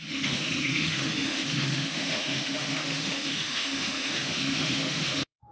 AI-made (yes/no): yes